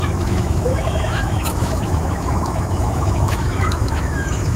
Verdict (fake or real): fake